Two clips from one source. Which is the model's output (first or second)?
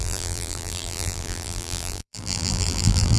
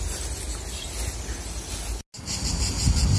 first